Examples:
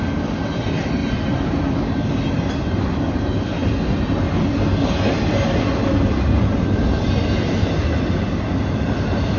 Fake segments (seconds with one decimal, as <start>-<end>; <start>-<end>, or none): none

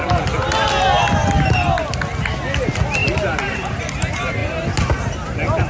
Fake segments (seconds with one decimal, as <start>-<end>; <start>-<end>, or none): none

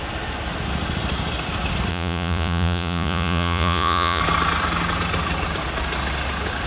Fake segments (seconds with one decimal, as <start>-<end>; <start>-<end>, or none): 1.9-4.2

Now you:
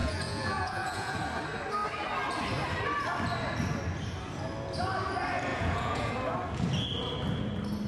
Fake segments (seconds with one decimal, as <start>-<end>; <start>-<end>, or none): 0.0-1.2; 5.5-6.1

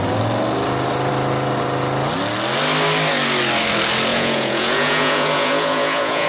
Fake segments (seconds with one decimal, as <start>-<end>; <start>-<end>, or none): 4.1-6.3

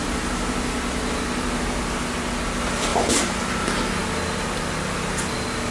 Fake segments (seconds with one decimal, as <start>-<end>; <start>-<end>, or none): none